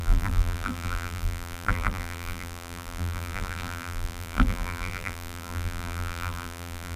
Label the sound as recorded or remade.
remade